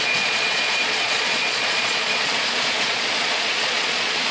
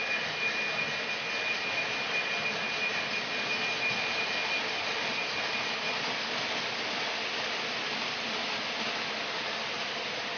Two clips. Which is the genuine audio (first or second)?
second